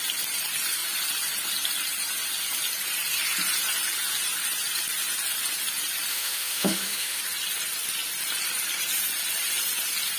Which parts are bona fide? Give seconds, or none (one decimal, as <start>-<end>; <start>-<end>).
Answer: 0.0-6.1; 7.2-10.2